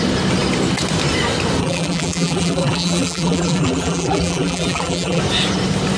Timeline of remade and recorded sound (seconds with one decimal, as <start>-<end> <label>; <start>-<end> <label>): 0.0-1.6 recorded; 1.6-5.2 remade; 5.2-6.0 recorded